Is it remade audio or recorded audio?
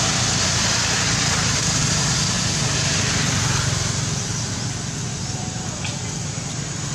recorded